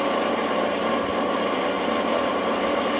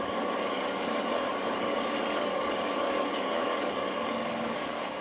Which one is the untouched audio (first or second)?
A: first